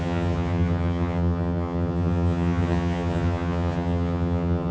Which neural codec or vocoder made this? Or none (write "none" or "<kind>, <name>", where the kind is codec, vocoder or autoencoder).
vocoder, HiFi-GAN